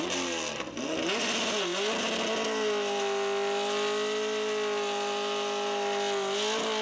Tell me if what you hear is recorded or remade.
recorded